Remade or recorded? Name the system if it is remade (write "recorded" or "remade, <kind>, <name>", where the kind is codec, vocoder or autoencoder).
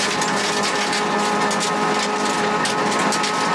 recorded